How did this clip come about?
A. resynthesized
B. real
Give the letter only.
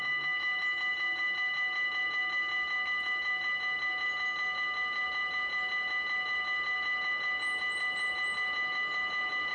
B